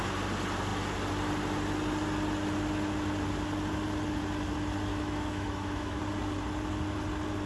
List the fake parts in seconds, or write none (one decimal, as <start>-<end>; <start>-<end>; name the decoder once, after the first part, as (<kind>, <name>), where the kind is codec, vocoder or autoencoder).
4.9-6.0 (autoencoder, DAC-VAE)